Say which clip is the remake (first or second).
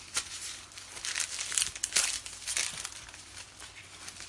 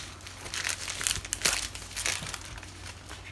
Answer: first